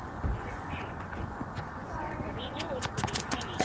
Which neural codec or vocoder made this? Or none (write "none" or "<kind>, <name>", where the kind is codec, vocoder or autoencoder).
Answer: vocoder, Vocos